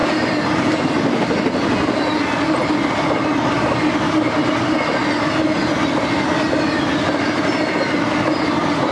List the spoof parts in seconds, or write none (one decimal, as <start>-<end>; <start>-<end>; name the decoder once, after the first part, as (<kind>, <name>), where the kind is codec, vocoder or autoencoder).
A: 0.0-0.9 (vocoder, BigVGAN v2)